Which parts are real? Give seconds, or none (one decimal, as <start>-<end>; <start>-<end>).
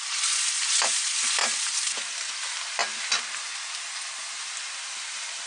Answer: 0.0-1.4; 2.3-5.5